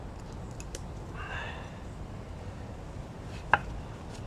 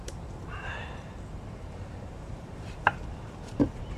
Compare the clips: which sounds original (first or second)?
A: first